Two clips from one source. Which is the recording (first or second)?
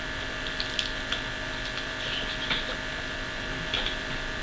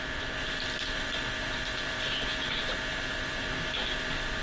first